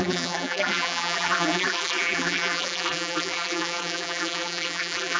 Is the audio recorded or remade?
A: remade